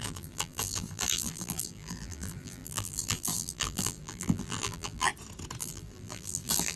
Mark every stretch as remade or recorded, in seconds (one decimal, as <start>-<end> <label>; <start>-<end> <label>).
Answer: 0.0-5.1 remade; 5.1-5.6 recorded; 5.6-6.8 remade